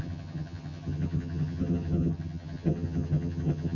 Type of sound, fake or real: fake